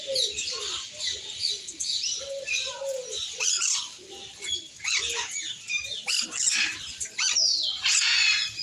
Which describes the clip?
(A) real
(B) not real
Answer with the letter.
A